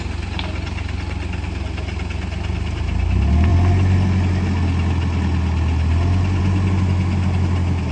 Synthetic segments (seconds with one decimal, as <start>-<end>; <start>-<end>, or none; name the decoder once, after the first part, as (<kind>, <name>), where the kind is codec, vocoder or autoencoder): none